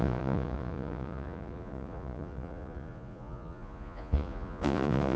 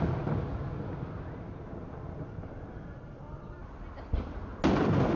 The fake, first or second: first